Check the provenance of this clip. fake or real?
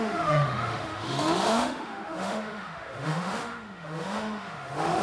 fake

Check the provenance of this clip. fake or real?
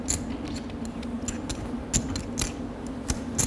real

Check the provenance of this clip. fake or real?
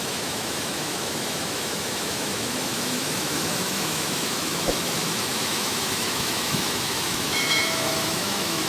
fake